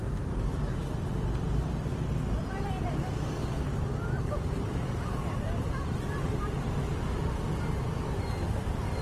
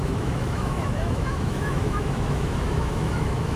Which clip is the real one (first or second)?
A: first